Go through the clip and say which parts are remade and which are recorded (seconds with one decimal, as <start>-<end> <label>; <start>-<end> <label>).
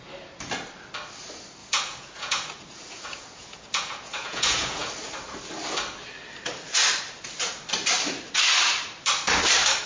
0.0-1.6 recorded; 1.6-4.9 remade; 4.9-9.9 recorded